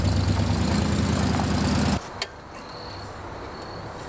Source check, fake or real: real